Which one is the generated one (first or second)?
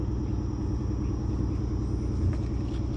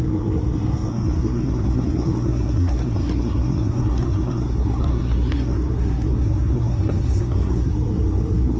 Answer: second